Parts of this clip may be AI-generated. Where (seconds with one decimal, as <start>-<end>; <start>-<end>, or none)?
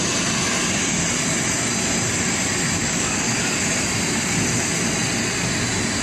2.8-3.6